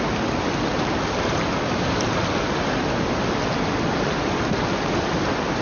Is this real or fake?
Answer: real